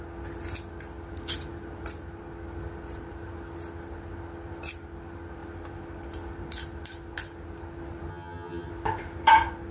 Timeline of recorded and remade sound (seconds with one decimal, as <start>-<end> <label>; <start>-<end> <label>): 0.0-8.1 recorded; 8.1-8.7 remade; 8.7-9.7 recorded